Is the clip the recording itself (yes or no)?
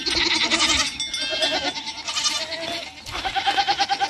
yes